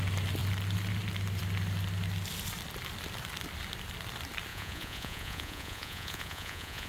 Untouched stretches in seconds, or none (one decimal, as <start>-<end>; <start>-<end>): 0.0-4.5